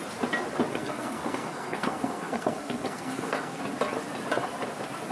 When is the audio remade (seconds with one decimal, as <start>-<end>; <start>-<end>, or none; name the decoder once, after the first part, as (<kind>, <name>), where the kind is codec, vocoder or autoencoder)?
0.7-3.6 (codec, SNAC)